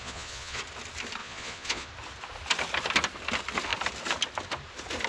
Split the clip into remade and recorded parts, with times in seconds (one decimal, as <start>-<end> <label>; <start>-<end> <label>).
0.0-0.6 remade; 0.6-1.2 recorded; 1.2-1.9 remade; 1.9-5.1 recorded